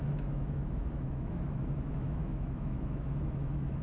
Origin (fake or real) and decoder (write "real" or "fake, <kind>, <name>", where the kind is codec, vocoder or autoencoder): fake, autoencoder, DAC-VAE